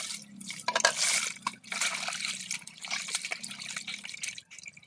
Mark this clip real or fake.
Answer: real